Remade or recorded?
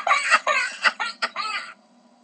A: remade